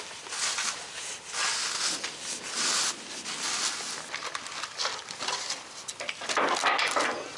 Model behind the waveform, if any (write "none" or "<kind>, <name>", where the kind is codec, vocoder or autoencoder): none